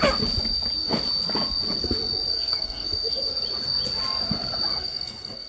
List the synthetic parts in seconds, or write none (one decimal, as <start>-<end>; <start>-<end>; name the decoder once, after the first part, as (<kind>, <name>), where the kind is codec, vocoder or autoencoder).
2.3-3.3 (codec, SNAC); 4.7-5.5